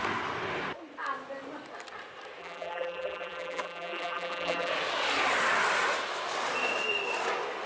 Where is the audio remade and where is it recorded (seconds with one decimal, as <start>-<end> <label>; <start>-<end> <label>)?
0.0-2.4 recorded; 2.4-4.7 remade; 4.7-7.7 recorded